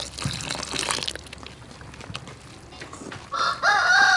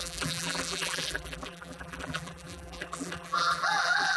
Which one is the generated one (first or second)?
second